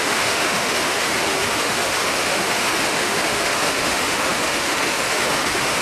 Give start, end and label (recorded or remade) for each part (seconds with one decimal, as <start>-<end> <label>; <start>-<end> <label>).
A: 0.0-5.8 remade